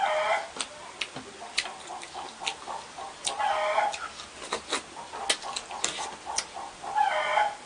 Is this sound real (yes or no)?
yes